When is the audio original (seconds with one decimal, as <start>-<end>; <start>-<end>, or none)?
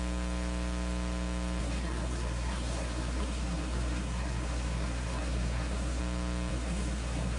0.0-1.6; 6.0-6.5